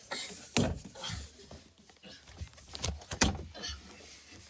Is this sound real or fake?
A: real